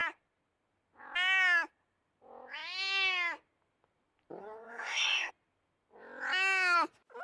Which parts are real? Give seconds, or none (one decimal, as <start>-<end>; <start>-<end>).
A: 0.0-4.4; 5.3-7.2